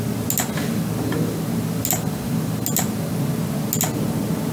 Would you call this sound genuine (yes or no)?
yes